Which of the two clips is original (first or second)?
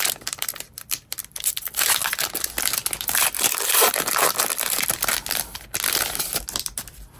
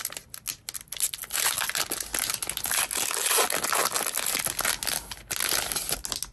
second